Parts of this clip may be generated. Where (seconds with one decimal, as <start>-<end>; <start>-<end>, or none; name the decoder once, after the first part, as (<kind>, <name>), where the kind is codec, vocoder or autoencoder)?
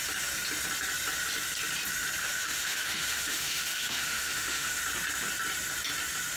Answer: 2.2-4.8 (autoencoder, DAC-VAE)